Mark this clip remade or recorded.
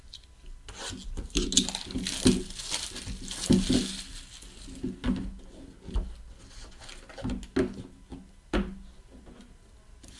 recorded